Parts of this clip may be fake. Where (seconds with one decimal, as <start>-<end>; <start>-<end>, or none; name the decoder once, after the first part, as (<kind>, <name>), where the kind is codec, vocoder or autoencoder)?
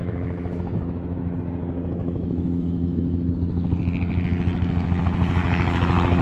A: 0.0-1.4 (autoencoder, DAC-VAE); 2.0-3.3; 5.4-6.2